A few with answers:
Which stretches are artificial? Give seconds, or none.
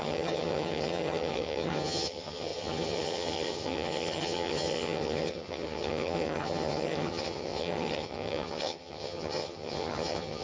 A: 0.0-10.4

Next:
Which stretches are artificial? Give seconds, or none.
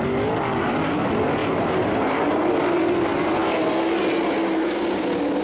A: none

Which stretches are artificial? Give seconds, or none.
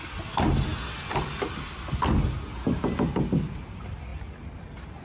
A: none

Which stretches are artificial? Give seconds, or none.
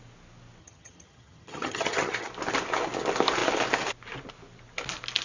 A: 0.6-2.3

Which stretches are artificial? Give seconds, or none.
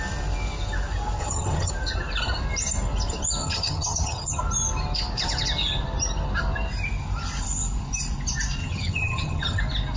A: 1.2-1.7; 3.4-4.4; 8.6-9.6